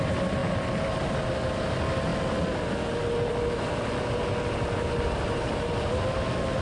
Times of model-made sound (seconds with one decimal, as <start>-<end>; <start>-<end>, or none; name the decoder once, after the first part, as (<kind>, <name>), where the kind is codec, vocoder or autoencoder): none